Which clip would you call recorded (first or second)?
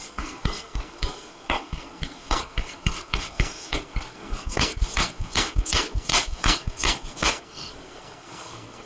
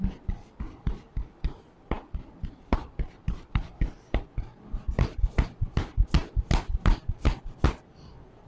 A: second